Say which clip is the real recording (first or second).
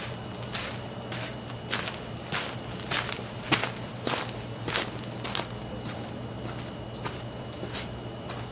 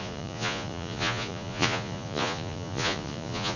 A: first